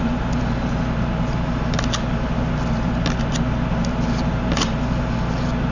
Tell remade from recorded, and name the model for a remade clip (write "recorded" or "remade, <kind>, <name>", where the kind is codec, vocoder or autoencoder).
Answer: recorded